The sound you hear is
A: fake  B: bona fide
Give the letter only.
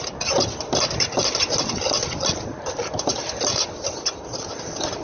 B